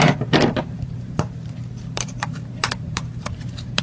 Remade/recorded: remade